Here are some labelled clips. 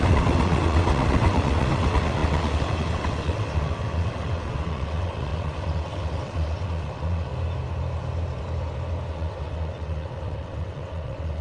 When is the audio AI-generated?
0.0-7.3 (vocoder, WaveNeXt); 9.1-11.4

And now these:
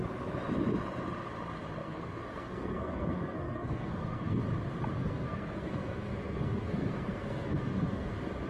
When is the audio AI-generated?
1.8-4.4 (codec, SNAC); 4.9-8.1